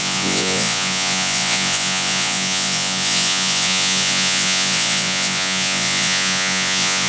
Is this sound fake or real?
fake